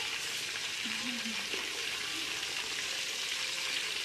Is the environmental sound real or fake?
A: fake